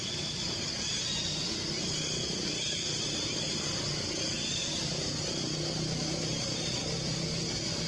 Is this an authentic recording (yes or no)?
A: yes